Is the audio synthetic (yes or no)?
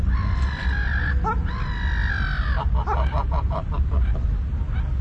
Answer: no